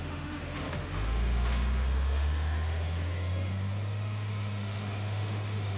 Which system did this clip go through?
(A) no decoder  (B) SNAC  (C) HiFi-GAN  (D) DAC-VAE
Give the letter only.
D